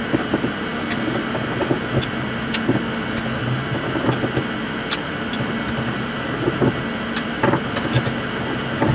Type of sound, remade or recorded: recorded